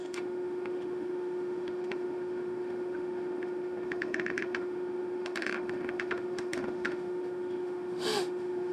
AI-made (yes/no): yes